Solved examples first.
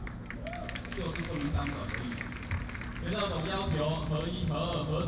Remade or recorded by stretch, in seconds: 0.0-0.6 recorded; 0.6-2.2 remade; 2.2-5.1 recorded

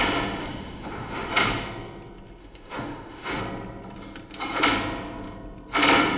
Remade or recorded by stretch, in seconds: 0.0-0.4 recorded; 0.4-1.3 remade; 1.3-2.4 recorded; 2.4-3.4 remade; 3.4-6.2 recorded